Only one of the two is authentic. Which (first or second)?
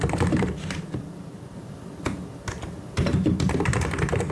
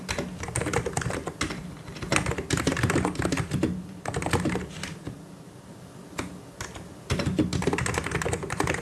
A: second